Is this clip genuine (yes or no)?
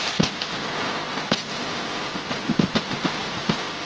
yes